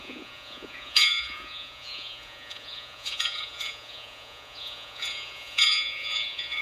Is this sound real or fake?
fake